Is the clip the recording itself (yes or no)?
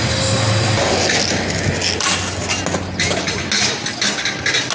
yes